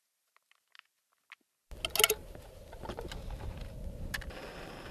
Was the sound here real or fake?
real